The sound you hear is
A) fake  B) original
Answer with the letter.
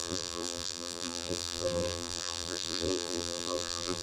A